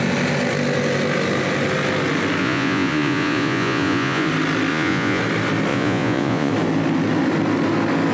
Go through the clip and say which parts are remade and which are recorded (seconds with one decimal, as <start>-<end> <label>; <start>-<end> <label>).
0.0-2.4 recorded; 2.4-4.3 remade; 4.3-4.7 recorded; 4.7-5.2 remade; 5.2-5.7 recorded; 5.7-6.5 remade; 6.5-8.1 recorded